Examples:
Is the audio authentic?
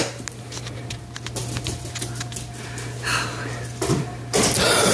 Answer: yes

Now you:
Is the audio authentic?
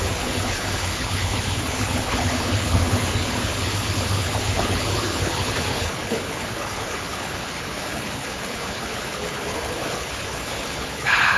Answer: no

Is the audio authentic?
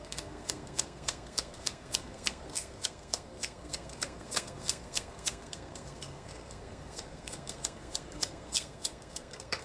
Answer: no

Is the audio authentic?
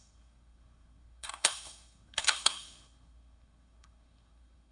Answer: no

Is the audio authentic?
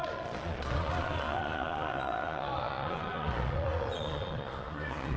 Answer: no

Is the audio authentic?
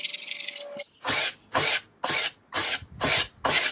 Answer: yes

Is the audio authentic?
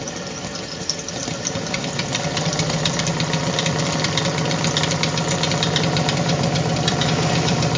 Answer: no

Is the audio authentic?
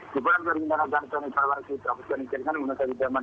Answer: yes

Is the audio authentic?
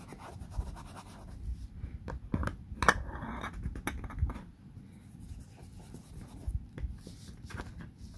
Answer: yes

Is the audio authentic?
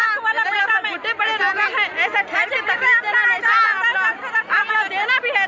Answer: yes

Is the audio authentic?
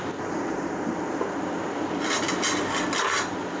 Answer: yes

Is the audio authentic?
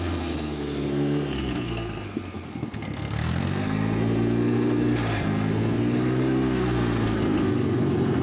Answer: no